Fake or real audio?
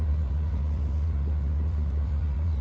fake